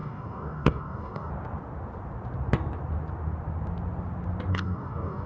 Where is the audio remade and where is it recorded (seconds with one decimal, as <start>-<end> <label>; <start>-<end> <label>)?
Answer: 0.0-1.3 remade; 1.3-4.5 recorded; 4.5-5.3 remade